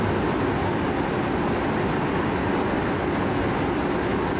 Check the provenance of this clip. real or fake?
real